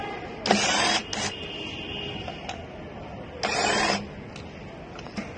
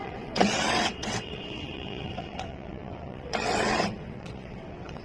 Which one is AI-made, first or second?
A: second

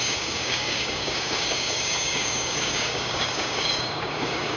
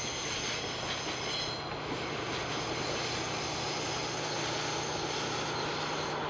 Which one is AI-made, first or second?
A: first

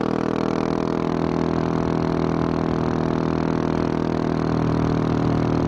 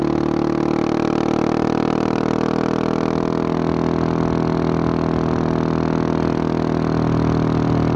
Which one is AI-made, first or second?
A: first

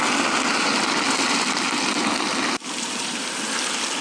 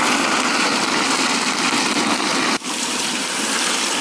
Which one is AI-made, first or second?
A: second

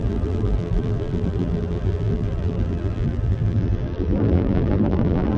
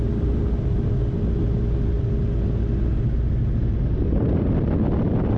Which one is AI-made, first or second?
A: first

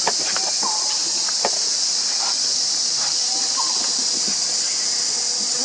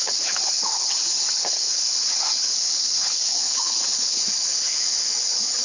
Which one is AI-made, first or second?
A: second